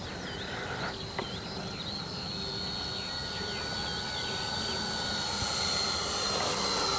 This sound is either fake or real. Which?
real